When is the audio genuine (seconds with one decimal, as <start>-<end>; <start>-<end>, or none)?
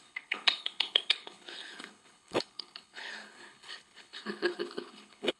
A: none